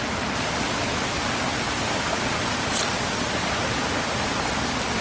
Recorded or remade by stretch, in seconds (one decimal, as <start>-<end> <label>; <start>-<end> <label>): 0.0-5.0 recorded